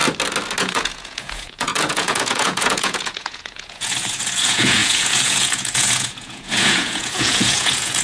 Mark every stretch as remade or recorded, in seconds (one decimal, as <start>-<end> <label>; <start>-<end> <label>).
0.0-0.6 recorded; 0.6-8.0 remade